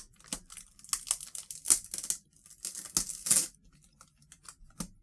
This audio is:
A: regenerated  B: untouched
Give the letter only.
B